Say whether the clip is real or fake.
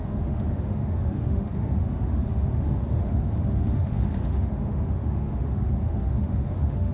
fake